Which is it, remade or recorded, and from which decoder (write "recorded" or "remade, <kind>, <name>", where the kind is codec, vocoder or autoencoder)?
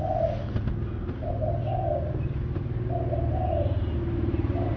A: recorded